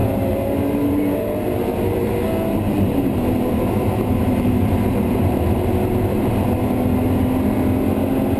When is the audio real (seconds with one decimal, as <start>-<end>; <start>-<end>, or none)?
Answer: 2.1-4.2; 5.7-8.4